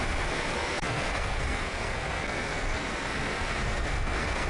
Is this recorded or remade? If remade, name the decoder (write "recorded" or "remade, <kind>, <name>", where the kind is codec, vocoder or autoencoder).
remade, codec, SNAC